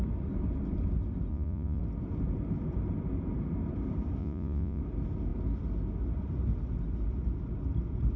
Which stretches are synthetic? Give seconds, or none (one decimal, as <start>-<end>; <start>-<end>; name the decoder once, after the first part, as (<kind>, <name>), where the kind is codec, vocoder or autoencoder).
1.3-1.8 (vocoder, Vocos); 4.2-4.8